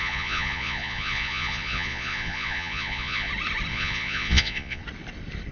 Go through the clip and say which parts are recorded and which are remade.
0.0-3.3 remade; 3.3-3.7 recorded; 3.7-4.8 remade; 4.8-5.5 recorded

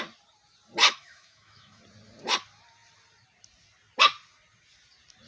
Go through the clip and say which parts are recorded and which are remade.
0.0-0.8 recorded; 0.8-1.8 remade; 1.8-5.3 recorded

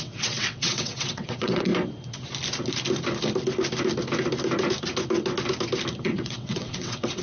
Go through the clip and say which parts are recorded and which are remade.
0.0-1.7 remade; 1.7-6.0 recorded; 6.0-7.2 remade

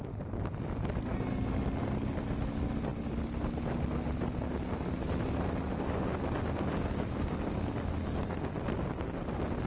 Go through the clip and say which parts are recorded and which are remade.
0.0-9.7 recorded

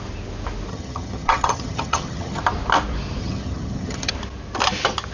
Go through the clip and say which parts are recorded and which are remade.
0.0-0.7 recorded; 0.7-2.4 remade; 2.4-3.2 recorded; 3.2-4.1 remade; 4.1-5.1 recorded

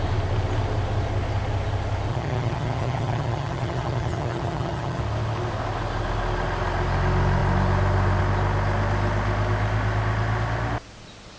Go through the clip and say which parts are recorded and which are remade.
0.0-2.1 recorded; 2.1-5.0 remade; 5.0-11.4 recorded

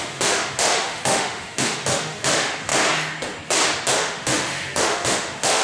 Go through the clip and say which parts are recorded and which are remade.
0.0-2.7 remade; 2.7-4.0 recorded; 4.0-5.6 remade